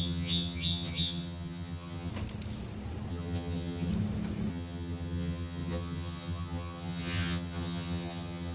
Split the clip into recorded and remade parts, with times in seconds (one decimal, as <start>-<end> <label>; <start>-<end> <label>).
0.0-2.1 remade; 2.1-3.1 recorded; 3.1-3.9 remade; 3.9-4.5 recorded; 4.5-8.5 remade